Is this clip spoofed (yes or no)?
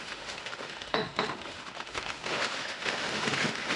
yes